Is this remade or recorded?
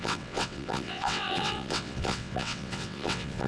remade